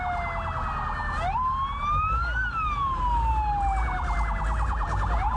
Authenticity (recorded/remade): recorded